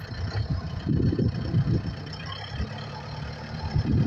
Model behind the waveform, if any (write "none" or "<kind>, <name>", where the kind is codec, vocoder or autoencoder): vocoder, BigVGAN v2